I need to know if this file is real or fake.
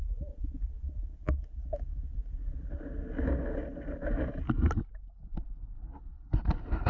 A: real